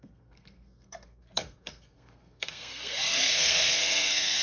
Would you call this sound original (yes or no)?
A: no